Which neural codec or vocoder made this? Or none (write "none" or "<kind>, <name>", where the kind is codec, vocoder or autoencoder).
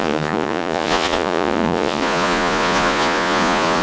vocoder, Vocos